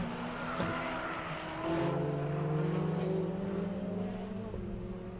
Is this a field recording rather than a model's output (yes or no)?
yes